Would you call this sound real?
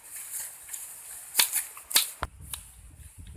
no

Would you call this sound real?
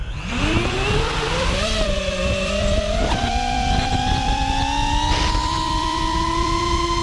no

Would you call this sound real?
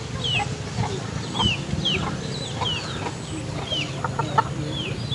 yes